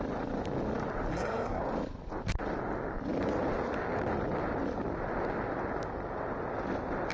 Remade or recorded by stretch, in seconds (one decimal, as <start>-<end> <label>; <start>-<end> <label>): 0.0-1.1 recorded; 1.1-1.6 remade; 1.6-7.1 recorded